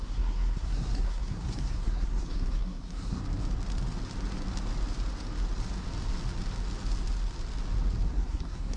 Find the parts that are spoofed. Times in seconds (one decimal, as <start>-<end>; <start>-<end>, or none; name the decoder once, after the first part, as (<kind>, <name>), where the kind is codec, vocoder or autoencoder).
0.0-3.2 (codec, SNAC); 8.1-8.8